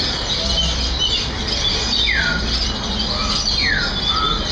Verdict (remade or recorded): recorded